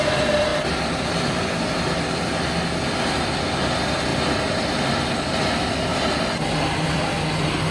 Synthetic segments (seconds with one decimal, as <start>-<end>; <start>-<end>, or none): none

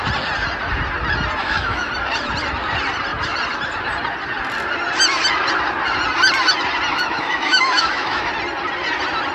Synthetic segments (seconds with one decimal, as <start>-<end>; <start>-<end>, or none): 1.4-1.9; 6.9-8.3

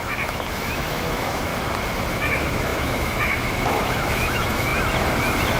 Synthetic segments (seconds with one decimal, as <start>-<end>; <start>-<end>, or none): 0.0-1.5; 2.1-4.7

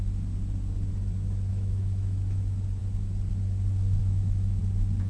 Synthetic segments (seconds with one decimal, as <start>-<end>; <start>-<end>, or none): 1.5-2.4; 4.0-4.6

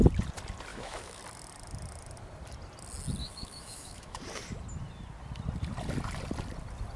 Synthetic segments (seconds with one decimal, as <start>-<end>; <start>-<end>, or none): 0.7-1.2; 3.2-4.2

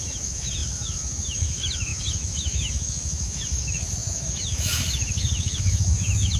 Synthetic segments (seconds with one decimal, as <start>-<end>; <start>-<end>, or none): 0.0-6.4